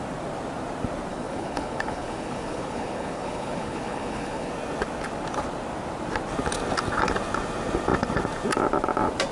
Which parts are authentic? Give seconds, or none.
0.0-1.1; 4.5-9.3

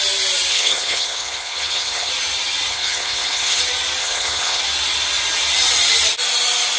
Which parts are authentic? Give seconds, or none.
0.0-0.5; 2.1-2.7; 3.6-4.0; 4.6-6.8

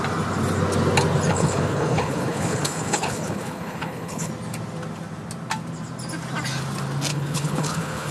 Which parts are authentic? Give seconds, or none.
0.0-1.3; 4.3-7.1

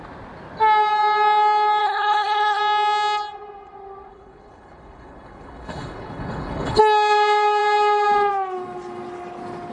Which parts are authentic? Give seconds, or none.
0.0-1.8; 2.6-4.1; 6.8-9.7

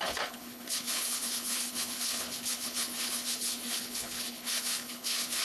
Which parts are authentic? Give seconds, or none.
none

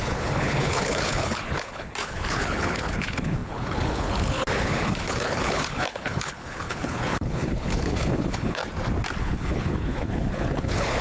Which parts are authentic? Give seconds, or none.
8.6-9.2

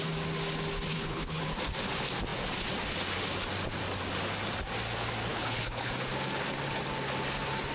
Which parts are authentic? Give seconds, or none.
0.0-0.9; 1.4-5.3; 5.9-7.7

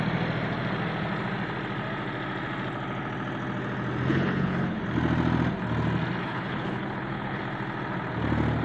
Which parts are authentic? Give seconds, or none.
0.0-4.1; 4.8-6.2; 7.4-8.6